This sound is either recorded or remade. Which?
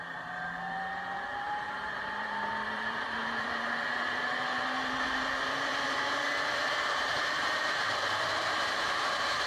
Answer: remade